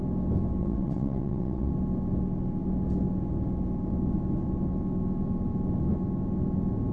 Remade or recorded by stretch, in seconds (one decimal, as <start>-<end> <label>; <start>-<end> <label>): 0.0-0.6 recorded; 0.6-1.7 remade; 1.7-6.9 recorded